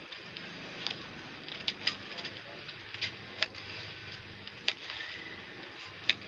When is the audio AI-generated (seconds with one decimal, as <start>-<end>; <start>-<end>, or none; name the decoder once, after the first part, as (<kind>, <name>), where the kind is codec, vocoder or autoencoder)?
0.0-1.6 (vocoder, BigVGAN v2)